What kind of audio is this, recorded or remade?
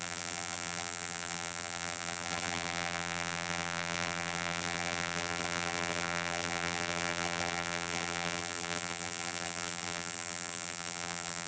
remade